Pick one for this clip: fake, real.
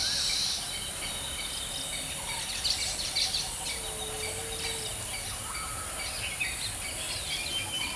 real